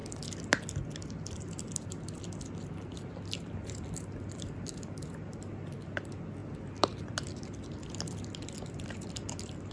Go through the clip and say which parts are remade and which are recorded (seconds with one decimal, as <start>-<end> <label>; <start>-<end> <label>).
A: 0.0-6.4 recorded; 6.4-9.7 remade